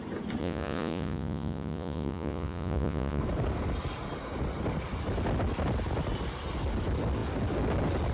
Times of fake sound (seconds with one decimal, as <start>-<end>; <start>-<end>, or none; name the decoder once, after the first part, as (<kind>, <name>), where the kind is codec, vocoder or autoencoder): 0.4-3.2 (vocoder, Vocos)